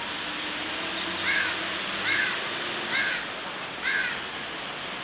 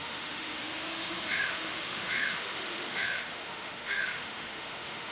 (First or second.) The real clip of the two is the first